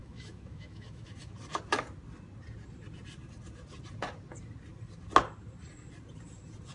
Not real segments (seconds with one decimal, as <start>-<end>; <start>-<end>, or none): 0.0-1.3